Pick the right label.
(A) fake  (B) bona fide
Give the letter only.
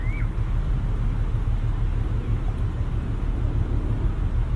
B